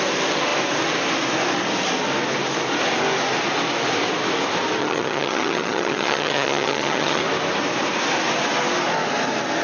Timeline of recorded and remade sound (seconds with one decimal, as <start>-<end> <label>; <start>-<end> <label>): 0.0-4.8 recorded; 4.8-7.2 remade; 7.2-9.6 recorded